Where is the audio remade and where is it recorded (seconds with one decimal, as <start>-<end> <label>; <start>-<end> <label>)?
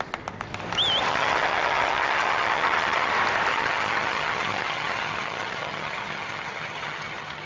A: 0.0-1.1 recorded; 1.1-3.1 remade; 3.1-3.5 recorded; 3.5-7.5 remade